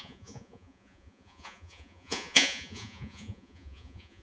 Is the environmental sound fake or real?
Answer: fake